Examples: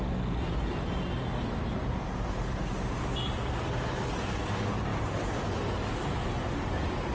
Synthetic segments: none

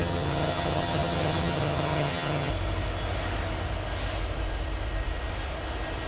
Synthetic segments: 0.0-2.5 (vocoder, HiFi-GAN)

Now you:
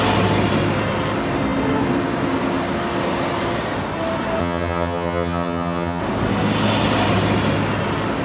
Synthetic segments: 4.4-6.0 (vocoder, HiFi-GAN)

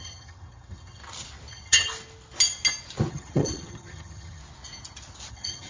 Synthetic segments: 0.0-1.0 (vocoder, HiFi-GAN); 1.5-1.9; 3.1-4.4; 5.3-5.7

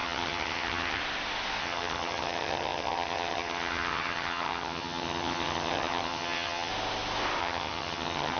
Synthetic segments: 0.0-1.0 (vocoder, HiFi-GAN); 1.6-6.7; 7.4-8.4